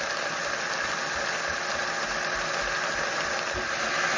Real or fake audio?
real